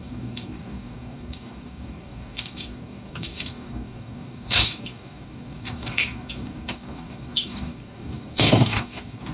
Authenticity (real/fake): fake